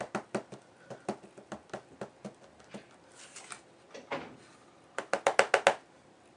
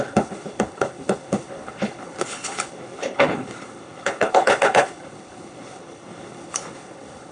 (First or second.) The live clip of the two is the first